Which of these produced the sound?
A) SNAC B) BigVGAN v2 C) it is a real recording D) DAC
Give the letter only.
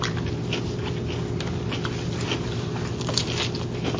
C